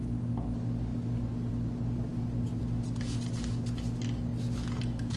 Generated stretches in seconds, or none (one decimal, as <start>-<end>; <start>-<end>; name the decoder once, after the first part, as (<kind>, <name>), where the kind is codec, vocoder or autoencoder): none